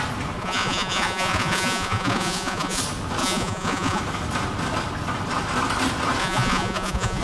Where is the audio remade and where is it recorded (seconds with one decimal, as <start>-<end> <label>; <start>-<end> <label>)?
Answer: 0.0-0.4 recorded; 0.4-2.8 remade; 2.8-3.2 recorded; 3.2-4.0 remade; 4.0-6.2 recorded; 6.2-7.2 remade